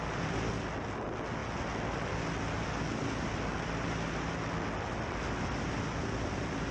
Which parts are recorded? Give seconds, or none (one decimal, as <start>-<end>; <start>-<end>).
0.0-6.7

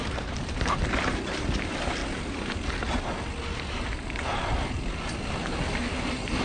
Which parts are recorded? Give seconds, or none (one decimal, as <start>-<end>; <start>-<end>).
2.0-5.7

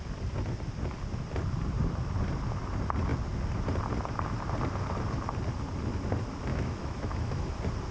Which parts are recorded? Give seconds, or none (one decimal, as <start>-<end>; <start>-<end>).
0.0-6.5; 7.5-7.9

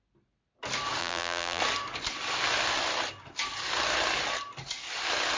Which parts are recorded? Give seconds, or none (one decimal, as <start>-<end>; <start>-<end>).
0.0-1.0; 1.6-5.4

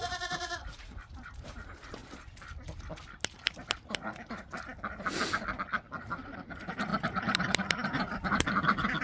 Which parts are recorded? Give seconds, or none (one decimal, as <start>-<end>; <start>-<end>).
2.0-6.0